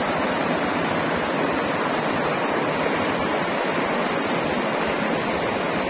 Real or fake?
real